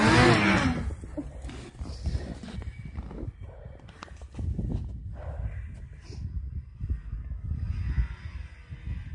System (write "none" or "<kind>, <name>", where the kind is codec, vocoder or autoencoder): none